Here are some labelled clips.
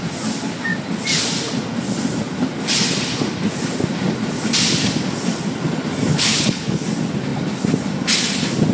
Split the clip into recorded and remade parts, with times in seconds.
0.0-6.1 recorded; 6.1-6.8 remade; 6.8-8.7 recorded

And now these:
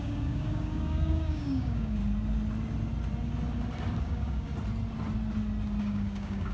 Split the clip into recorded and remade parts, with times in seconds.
0.0-2.0 remade; 2.0-4.0 recorded; 4.0-4.5 remade; 4.5-5.8 recorded; 5.8-6.5 remade

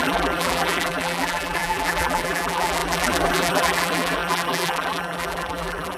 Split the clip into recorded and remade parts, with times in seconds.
0.0-6.0 remade